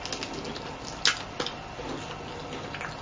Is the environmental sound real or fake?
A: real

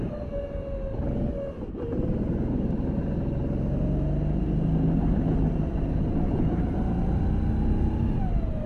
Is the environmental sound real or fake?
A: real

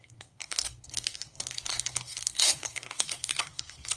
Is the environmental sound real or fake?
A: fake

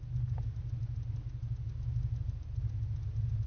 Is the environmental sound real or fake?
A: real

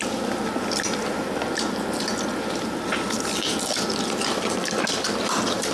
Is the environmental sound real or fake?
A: real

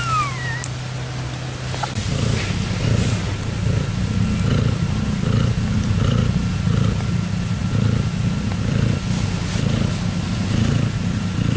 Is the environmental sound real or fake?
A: real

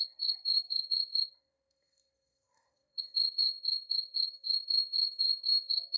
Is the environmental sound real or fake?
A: fake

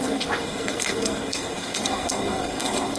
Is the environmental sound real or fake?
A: fake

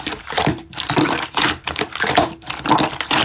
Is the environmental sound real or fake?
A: real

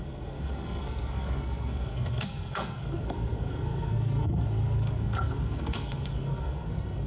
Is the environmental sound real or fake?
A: fake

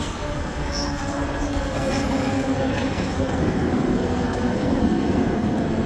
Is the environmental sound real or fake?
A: fake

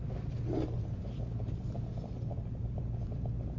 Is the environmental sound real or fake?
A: real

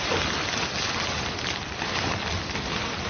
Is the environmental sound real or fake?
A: real